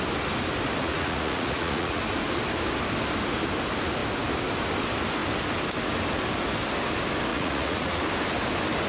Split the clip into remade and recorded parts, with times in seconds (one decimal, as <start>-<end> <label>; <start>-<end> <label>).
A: 0.0-0.8 recorded; 0.8-2.0 remade; 2.0-7.3 recorded; 7.3-8.0 remade; 8.0-8.9 recorded